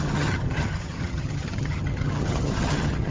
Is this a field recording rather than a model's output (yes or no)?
no